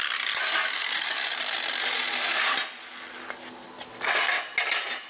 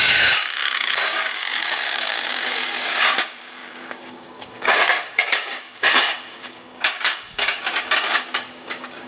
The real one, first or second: first